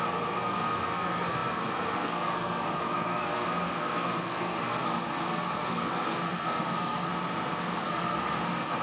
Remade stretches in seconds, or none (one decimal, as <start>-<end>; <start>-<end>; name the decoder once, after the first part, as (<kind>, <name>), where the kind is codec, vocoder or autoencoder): 0.0-7.1 (codec, SNAC); 7.6-8.8